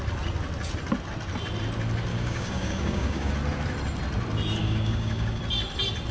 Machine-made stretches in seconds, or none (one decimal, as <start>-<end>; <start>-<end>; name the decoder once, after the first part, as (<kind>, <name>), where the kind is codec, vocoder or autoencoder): 2.1-3.3 (codec, DAC); 4.6-5.4